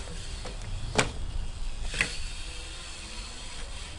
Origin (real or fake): real